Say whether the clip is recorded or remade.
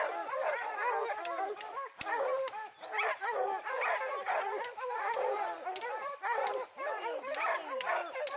recorded